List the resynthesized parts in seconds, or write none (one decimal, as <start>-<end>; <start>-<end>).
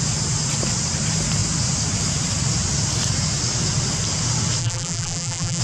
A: 4.6-5.6